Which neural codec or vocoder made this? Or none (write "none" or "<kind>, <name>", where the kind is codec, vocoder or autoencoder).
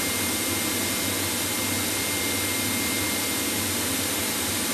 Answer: none